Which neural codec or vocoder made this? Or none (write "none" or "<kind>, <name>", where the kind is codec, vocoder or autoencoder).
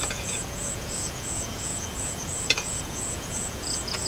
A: vocoder, Vocos